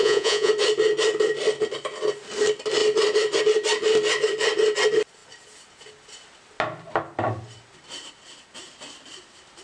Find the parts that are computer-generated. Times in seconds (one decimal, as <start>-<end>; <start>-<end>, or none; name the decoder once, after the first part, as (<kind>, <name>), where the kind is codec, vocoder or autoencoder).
0.0-0.5 (vocoder, Vocos)